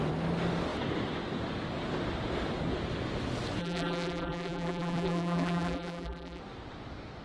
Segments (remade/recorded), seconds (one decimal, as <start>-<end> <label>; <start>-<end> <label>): 0.0-3.6 recorded; 3.6-6.4 remade; 6.4-7.2 recorded